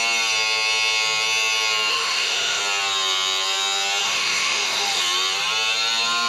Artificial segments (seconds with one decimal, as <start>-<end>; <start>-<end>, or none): 1.9-2.6; 4.0-5.0